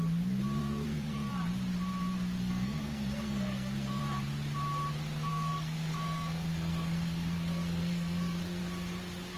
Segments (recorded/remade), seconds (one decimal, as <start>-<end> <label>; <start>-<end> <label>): 0.0-0.6 recorded; 0.6-1.3 remade; 1.3-2.4 recorded; 2.4-4.0 remade; 4.0-5.3 recorded; 5.3-8.6 remade; 8.6-9.4 recorded